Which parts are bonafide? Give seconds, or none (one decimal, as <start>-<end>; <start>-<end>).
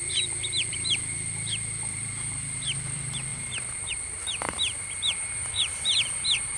none